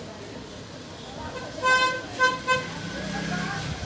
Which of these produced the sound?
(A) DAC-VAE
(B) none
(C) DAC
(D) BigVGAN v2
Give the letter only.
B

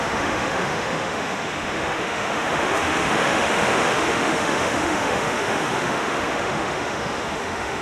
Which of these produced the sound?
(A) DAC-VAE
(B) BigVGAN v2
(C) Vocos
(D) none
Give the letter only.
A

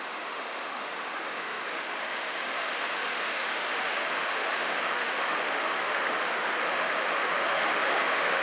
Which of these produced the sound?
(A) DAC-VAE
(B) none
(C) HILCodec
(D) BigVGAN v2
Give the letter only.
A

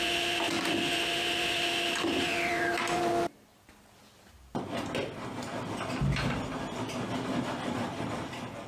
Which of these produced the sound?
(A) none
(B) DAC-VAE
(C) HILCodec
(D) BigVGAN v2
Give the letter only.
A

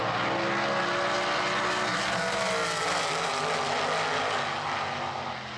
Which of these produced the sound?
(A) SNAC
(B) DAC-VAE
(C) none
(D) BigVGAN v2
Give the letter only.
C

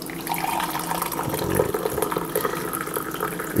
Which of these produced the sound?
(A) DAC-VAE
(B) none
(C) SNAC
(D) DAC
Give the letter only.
B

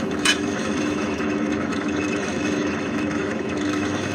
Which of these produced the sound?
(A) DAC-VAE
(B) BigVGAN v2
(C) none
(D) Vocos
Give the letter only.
A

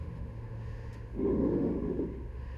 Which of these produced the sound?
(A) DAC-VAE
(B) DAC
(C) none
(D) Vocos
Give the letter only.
A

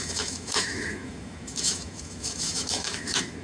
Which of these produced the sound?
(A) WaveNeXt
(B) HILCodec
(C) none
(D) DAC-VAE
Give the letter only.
D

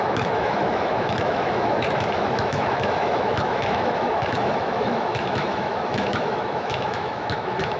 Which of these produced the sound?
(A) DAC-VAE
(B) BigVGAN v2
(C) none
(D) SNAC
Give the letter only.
A